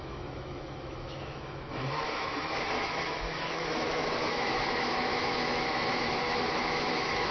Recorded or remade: remade